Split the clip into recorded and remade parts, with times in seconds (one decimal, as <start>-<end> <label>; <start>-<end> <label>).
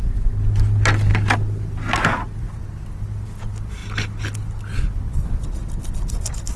0.0-6.6 recorded